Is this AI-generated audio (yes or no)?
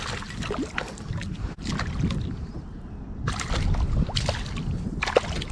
no